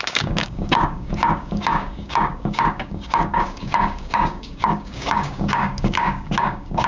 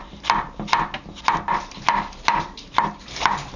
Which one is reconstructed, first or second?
first